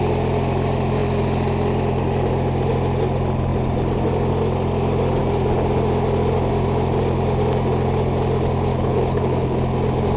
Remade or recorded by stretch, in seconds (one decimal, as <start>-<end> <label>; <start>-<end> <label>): 0.0-8.7 recorded; 8.7-9.6 remade; 9.6-10.2 recorded